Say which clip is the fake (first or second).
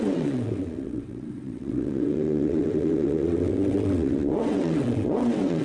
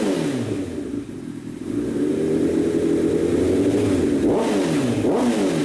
first